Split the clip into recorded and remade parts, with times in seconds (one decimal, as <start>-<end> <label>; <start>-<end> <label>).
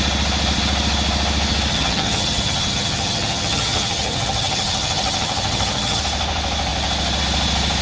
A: 0.0-1.7 recorded; 1.7-6.0 remade; 6.0-7.8 recorded